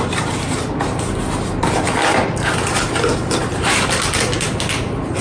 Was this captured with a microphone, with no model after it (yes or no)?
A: yes